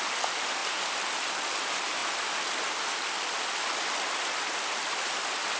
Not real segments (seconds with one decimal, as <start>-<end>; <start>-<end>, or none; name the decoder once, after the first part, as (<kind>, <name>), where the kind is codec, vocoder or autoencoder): none